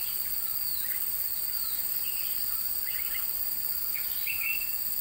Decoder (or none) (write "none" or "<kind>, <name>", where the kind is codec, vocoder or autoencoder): none